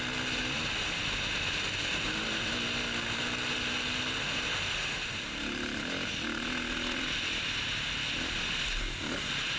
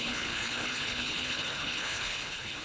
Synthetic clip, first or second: second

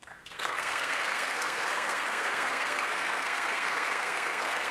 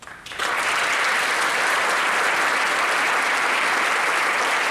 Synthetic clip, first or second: first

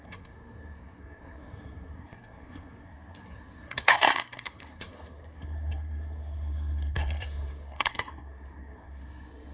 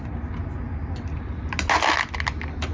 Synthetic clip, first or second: first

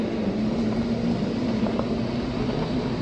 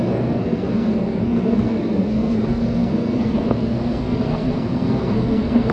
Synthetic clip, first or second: second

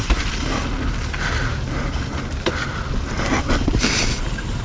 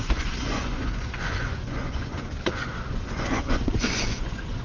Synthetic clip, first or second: second